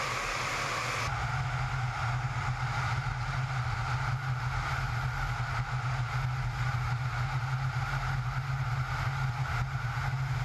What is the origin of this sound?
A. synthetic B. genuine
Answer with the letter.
B